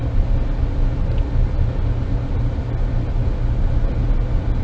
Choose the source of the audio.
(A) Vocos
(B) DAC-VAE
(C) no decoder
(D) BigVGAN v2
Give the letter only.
C